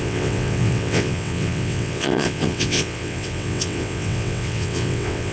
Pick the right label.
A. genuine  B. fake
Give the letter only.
B